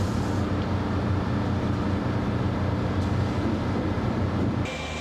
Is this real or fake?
real